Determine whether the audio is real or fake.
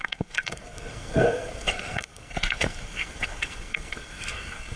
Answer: fake